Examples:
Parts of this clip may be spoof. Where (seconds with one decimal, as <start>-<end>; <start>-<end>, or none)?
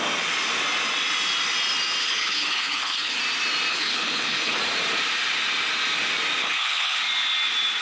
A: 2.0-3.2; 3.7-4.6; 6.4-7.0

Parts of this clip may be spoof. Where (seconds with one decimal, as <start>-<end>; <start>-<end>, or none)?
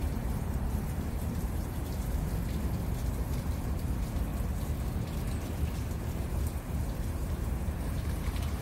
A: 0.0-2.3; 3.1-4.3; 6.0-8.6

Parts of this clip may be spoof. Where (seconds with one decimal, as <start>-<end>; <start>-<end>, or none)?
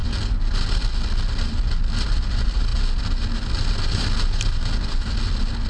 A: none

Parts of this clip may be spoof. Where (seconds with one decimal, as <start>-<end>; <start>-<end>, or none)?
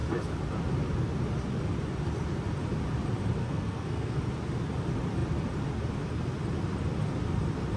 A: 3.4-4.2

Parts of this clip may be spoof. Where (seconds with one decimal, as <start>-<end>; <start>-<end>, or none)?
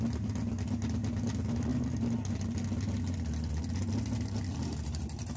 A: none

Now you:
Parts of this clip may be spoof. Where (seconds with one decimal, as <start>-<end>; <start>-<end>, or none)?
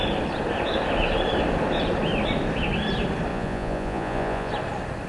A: 3.3-4.5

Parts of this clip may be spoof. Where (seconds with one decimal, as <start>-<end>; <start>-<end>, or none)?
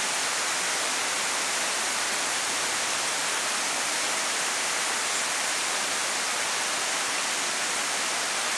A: none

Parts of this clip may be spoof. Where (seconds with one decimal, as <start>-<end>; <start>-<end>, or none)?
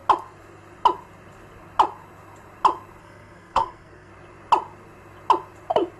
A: 3.0-4.1